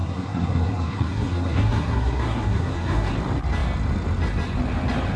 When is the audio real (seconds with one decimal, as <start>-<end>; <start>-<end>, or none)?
3.1-5.2